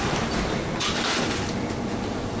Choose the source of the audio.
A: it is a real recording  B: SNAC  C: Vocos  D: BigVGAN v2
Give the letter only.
A